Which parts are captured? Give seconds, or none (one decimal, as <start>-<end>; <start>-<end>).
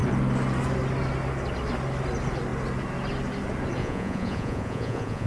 0.0-3.8